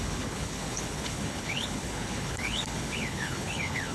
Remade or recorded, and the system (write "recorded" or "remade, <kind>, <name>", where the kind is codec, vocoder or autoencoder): remade, codec, HILCodec